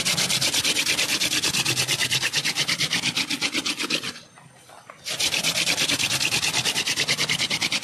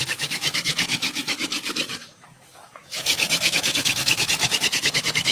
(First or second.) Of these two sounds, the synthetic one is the second